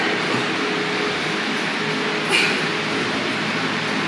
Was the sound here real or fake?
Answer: real